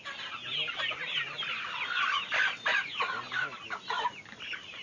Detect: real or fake real